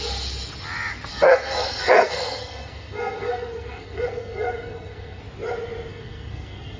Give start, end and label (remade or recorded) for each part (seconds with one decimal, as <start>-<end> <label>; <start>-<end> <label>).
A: 0.0-1.1 recorded; 1.1-5.2 remade; 5.2-5.9 recorded; 5.9-6.8 remade